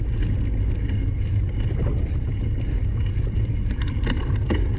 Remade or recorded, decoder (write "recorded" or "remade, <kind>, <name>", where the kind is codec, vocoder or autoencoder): recorded